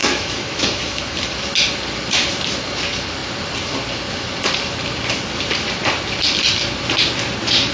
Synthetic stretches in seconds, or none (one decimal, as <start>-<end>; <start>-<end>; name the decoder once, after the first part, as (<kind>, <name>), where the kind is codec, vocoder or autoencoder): 0.0-1.3 (autoencoder, DAC-VAE)